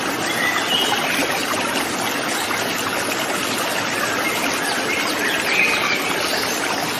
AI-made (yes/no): no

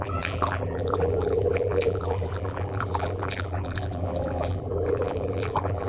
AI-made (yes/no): yes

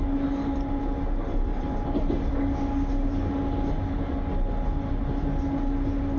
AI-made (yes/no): no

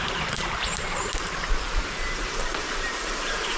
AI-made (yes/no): yes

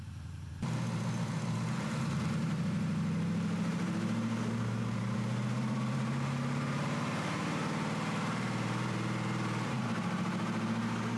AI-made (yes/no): yes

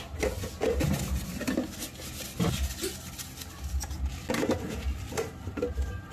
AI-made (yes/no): no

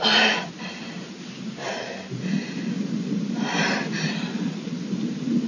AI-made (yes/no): no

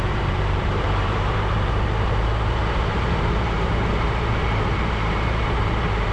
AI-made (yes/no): yes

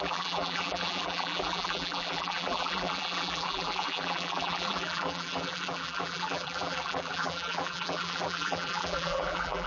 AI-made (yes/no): yes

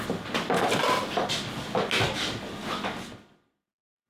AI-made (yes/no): no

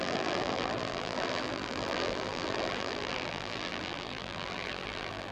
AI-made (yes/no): yes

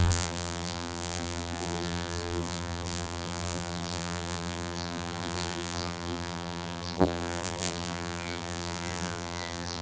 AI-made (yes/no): yes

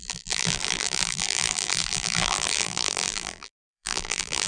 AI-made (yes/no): yes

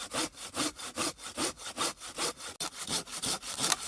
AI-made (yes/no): no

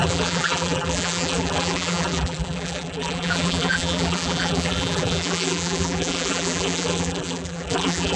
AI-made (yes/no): yes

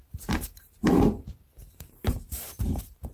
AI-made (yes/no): yes